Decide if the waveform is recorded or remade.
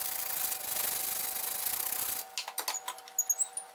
recorded